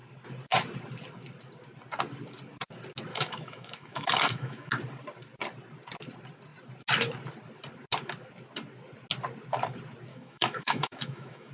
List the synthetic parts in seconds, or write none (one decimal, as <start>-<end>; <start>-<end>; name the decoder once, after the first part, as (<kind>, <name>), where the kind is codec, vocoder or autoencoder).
3.1-4.7 (autoencoder, DAC-VAE); 10.1-11.5